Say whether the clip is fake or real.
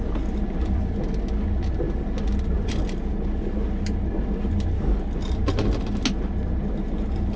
real